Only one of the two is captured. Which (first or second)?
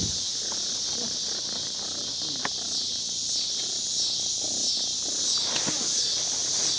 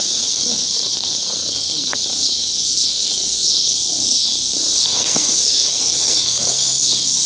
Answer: first